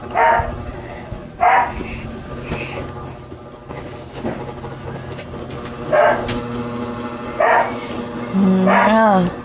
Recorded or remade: recorded